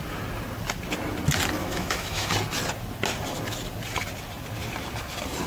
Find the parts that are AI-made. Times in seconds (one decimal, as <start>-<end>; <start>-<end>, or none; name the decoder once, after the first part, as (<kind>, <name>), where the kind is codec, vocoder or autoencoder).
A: 1.6-2.3 (autoencoder, DAC-VAE)